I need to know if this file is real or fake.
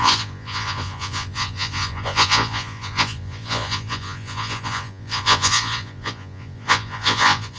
fake